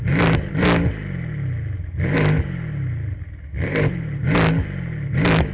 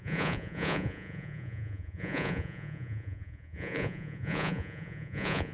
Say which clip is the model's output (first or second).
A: second